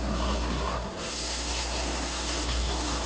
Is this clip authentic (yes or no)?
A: no